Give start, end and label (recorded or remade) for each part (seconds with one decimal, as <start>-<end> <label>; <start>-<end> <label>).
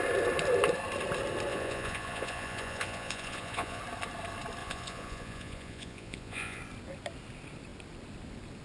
0.0-1.5 recorded; 1.5-3.8 remade; 3.8-4.6 recorded; 4.6-6.6 remade; 6.6-8.6 recorded